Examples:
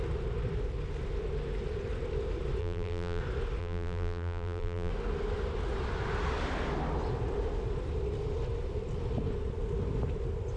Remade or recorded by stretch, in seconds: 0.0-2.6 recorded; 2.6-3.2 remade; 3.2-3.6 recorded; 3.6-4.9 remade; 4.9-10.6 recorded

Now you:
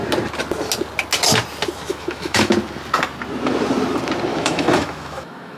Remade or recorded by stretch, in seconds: 0.0-1.9 recorded; 1.9-2.5 remade; 2.5-4.3 recorded; 4.3-5.6 remade

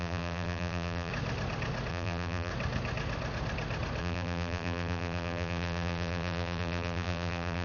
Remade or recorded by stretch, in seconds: 0.0-1.1 remade; 1.1-1.9 recorded; 1.9-2.5 remade; 2.5-4.0 recorded; 4.0-7.6 remade

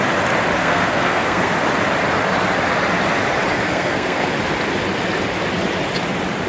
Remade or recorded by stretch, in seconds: 0.0-0.6 recorded; 0.6-1.5 remade; 1.5-3.7 recorded; 3.7-4.3 remade; 4.3-6.5 recorded

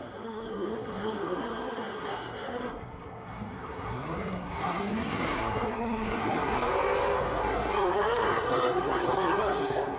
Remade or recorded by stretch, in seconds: 0.0-6.7 remade; 6.7-7.4 recorded; 7.4-10.0 remade

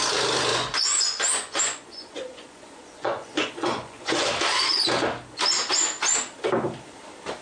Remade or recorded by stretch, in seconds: 0.0-0.5 recorded; 0.5-4.3 remade; 4.3-7.4 recorded

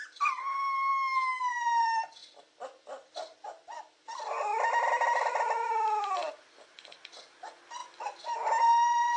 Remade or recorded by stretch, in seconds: 0.0-0.9 recorded; 0.9-1.5 remade; 1.5-9.2 recorded